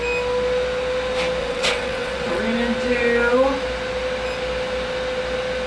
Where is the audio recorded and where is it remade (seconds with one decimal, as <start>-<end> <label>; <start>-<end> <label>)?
0.0-1.4 recorded; 1.4-2.4 remade; 2.4-5.7 recorded

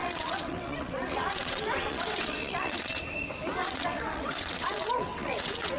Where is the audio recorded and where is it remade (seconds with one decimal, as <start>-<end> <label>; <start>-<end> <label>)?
0.0-3.0 remade; 3.0-3.6 recorded; 3.6-5.8 remade

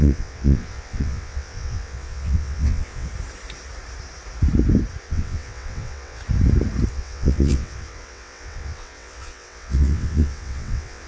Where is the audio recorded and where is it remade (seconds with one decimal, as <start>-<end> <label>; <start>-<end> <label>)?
0.0-3.1 remade; 3.1-5.0 recorded; 5.0-6.2 remade; 6.2-6.9 recorded; 6.9-11.1 remade

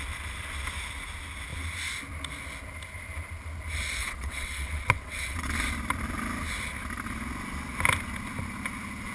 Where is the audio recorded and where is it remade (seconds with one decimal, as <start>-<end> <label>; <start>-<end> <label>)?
0.0-4.0 recorded; 4.0-5.5 remade; 5.5-9.1 recorded

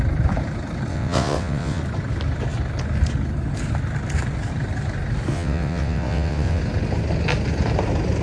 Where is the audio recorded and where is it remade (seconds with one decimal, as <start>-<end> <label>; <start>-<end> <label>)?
0.0-0.9 recorded; 0.9-1.8 remade; 1.8-5.3 recorded; 5.3-6.6 remade; 6.6-8.2 recorded

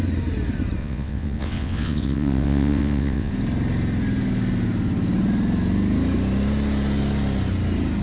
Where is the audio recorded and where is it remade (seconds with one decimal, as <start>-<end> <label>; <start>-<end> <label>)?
0.0-0.8 recorded; 0.8-3.3 remade; 3.3-8.0 recorded

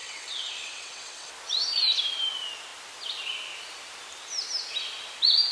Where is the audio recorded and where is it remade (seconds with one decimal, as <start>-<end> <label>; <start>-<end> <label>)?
0.0-1.3 remade; 1.3-5.5 recorded